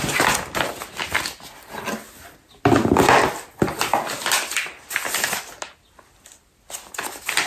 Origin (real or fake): real